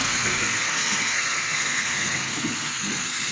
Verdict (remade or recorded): remade